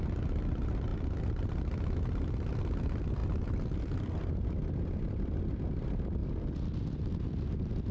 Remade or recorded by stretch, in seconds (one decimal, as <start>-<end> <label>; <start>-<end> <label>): 0.0-7.9 recorded